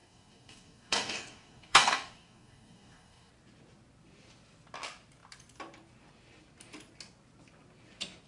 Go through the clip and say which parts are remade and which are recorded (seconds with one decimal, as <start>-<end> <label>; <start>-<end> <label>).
0.0-3.3 remade; 3.3-8.3 recorded